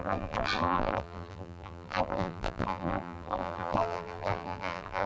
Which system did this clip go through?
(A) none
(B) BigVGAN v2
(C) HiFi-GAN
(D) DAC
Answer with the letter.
B